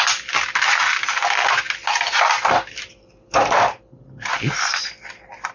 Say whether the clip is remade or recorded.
recorded